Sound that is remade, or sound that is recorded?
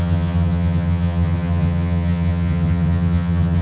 remade